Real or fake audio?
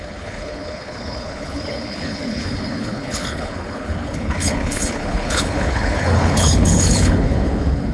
fake